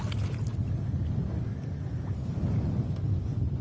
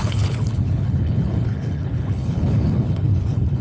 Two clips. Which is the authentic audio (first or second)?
first